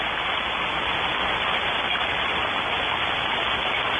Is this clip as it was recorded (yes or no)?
yes